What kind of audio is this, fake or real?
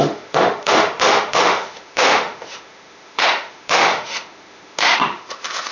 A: fake